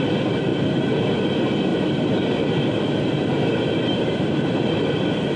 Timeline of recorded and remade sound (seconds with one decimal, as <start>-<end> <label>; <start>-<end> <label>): 0.0-0.5 recorded; 0.5-1.2 remade; 1.2-1.7 recorded; 1.7-4.9 remade; 4.9-5.4 recorded